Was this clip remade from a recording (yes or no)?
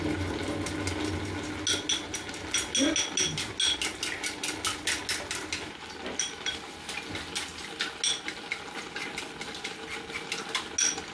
no